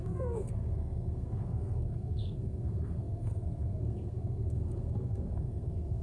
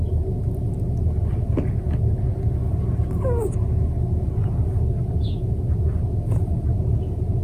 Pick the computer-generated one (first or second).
first